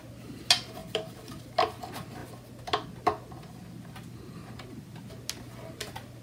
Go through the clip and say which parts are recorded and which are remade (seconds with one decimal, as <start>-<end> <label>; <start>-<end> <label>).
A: 0.0-0.8 recorded; 0.8-1.4 remade; 1.4-6.2 recorded